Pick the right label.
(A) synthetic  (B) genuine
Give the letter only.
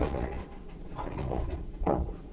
A